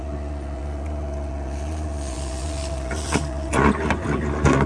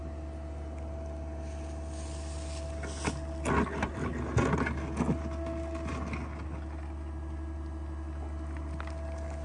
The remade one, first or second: first